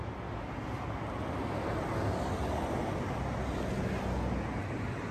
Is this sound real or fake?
real